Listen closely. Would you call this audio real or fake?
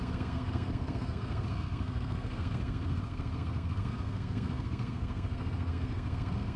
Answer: fake